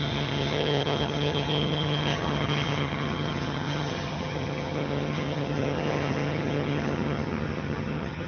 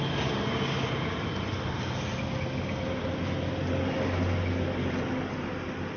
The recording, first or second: second